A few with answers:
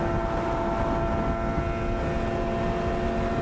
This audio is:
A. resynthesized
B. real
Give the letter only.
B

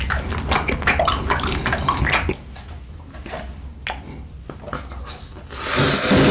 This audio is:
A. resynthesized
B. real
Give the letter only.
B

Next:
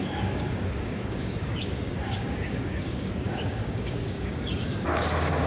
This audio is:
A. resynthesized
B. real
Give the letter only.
A